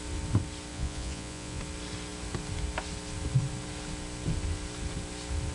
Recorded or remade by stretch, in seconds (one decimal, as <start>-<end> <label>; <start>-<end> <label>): 0.0-0.7 recorded; 0.7-1.6 remade; 1.6-5.5 recorded